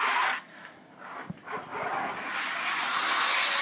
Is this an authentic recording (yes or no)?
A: yes